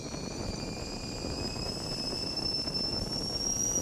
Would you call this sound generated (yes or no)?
no